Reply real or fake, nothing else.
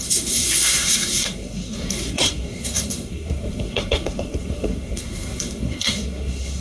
fake